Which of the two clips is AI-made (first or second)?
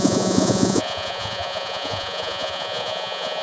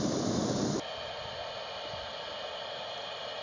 first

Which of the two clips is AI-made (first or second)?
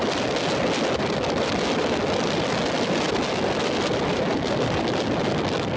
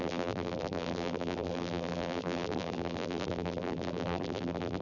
second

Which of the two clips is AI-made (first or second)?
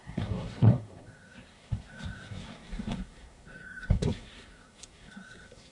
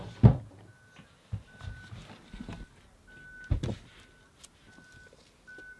first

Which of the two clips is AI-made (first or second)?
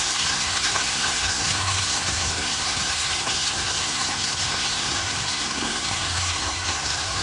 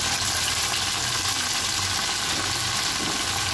first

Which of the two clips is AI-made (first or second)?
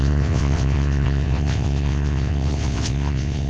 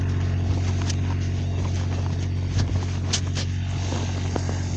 first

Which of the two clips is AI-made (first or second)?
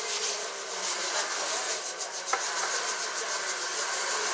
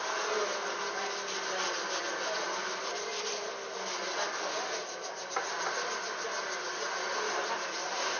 first